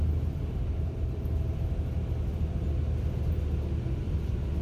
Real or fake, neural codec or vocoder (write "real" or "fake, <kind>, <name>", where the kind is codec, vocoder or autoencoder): real